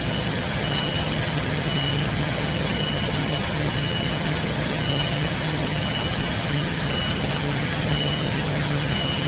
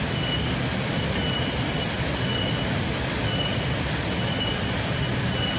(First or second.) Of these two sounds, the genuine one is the second